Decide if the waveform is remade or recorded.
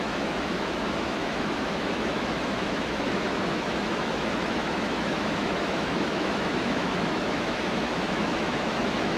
remade